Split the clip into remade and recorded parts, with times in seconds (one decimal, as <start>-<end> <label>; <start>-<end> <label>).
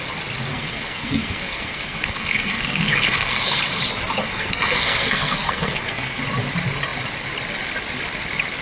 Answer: 0.0-0.5 recorded; 0.5-3.6 remade; 3.6-4.2 recorded; 4.2-6.2 remade; 6.2-8.6 recorded